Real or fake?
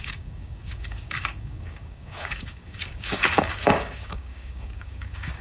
fake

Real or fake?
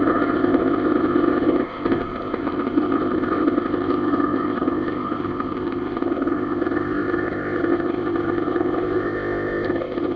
fake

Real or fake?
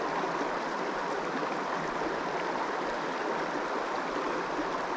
real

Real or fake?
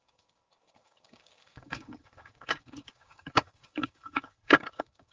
fake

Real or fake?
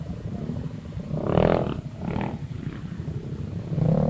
fake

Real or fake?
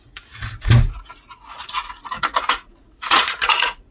fake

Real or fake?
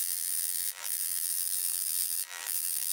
fake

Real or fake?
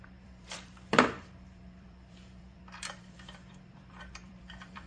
fake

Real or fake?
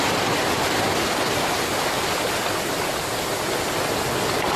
real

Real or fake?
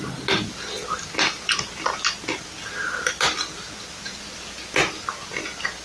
real